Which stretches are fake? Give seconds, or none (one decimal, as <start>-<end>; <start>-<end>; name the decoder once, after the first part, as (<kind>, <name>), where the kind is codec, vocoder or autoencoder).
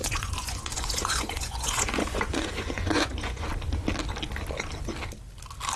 0.0-3.5 (vocoder, Vocos)